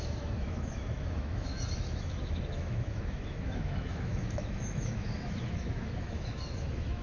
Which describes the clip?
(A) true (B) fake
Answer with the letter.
B